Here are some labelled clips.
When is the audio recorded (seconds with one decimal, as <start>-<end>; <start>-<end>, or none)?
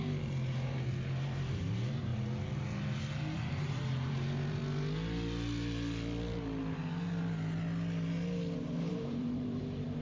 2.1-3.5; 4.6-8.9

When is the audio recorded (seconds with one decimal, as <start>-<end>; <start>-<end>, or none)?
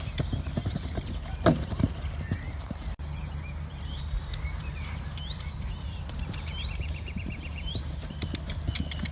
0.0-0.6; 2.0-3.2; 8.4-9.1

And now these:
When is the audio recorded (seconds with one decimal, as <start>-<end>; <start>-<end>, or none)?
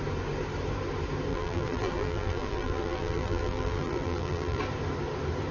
0.0-1.3; 4.6-5.5